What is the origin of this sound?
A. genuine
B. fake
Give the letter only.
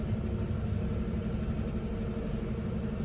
A